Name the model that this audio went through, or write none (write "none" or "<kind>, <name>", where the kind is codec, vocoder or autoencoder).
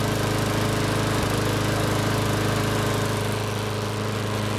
none